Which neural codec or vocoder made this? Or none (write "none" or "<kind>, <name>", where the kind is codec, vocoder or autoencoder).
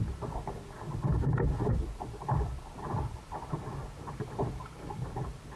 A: none